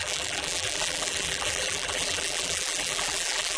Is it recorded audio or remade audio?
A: remade